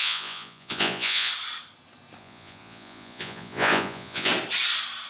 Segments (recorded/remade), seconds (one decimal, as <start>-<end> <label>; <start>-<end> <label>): 0.0-1.3 remade; 1.3-2.2 recorded; 2.2-4.3 remade; 4.3-5.1 recorded